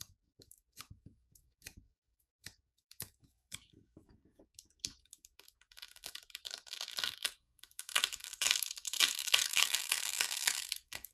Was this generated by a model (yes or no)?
yes